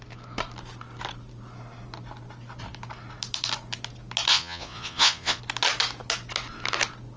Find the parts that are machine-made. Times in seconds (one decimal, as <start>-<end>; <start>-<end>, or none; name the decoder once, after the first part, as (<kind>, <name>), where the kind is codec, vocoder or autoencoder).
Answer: 4.3-5.4 (vocoder, Vocos)